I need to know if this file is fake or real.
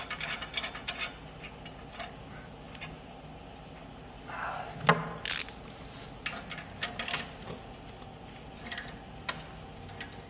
real